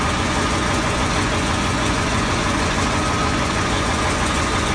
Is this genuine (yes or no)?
no